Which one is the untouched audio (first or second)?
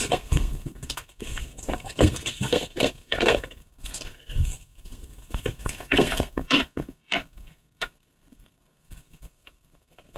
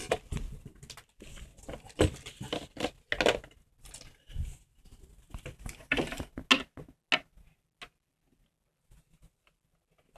second